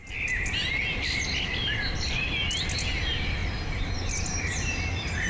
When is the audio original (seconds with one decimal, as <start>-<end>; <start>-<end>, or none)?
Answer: 0.0-5.3